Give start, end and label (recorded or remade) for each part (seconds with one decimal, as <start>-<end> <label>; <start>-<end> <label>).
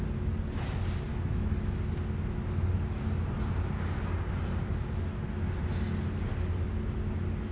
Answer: 0.0-1.1 recorded; 1.1-1.7 remade; 1.7-7.5 recorded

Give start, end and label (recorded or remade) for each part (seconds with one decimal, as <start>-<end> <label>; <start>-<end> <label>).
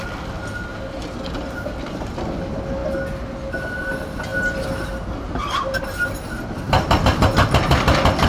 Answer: 0.0-8.3 recorded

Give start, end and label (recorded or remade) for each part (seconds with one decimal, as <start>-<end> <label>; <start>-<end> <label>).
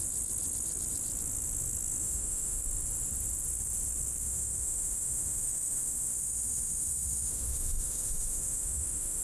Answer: 0.0-2.0 recorded; 2.0-2.6 remade; 2.6-4.2 recorded; 4.2-9.2 remade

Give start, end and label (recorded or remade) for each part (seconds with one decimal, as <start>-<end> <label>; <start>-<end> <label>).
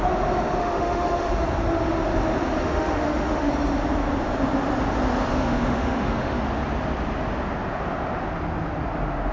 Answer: 0.0-0.6 recorded; 0.6-1.3 remade; 1.3-2.6 recorded; 2.6-3.5 remade; 3.5-5.3 recorded; 5.3-6.4 remade; 6.4-9.3 recorded